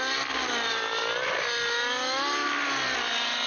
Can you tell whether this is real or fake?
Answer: real